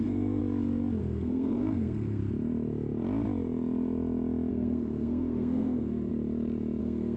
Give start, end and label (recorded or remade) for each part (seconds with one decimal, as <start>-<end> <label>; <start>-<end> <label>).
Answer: 0.0-0.4 remade; 0.4-1.0 recorded; 1.0-2.2 remade; 2.2-4.5 recorded; 4.5-6.1 remade; 6.1-6.8 recorded; 6.8-7.2 remade